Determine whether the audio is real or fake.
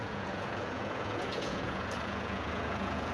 fake